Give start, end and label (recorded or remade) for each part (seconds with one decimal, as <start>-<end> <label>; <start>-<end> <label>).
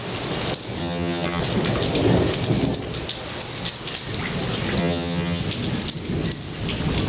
0.0-0.8 recorded; 0.8-1.4 remade; 1.4-4.8 recorded; 4.8-5.4 remade; 5.4-7.1 recorded